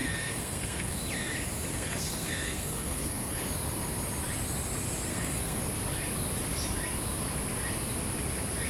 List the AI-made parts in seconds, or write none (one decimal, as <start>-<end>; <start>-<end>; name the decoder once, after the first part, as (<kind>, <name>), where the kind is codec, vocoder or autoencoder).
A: 0.0-1.0 (codec, SNAC); 1.7-3.4; 5.1-5.6